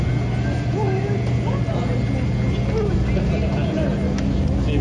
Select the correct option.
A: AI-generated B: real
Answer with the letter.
B